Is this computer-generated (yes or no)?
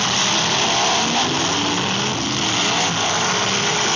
no